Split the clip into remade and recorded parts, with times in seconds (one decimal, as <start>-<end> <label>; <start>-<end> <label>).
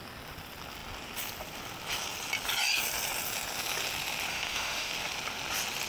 0.0-4.3 recorded; 4.3-4.9 remade; 4.9-5.9 recorded